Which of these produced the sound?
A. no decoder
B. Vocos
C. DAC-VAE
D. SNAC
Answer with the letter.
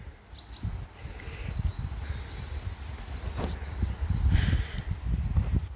A